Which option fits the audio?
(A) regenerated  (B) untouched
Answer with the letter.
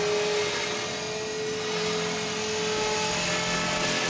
B